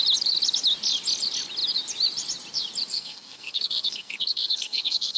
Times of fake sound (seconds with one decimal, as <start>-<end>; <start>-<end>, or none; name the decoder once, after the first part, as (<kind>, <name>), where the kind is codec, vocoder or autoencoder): 2.9-5.2 (codec, SNAC)